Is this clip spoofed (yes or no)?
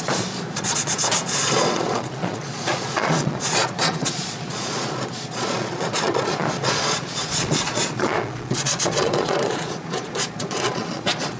yes